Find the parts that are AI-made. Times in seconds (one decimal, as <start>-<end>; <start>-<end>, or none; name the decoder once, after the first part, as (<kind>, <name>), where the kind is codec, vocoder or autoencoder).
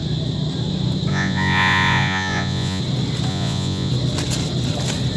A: 1.1-2.8 (vocoder, Vocos); 3.3-3.9